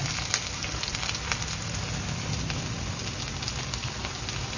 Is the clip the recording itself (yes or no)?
yes